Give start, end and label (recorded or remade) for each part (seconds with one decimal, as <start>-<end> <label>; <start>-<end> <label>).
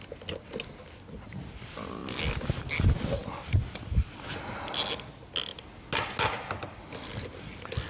0.0-7.9 recorded